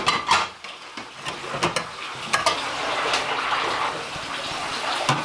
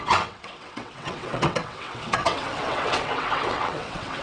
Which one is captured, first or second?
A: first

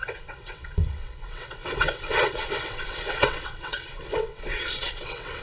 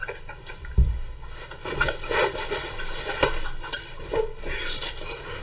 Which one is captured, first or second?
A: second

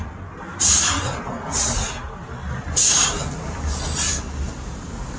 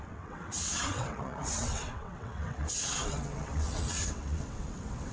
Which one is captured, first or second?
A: first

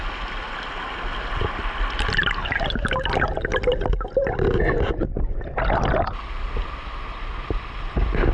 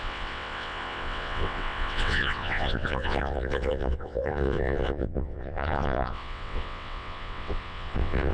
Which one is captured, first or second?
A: first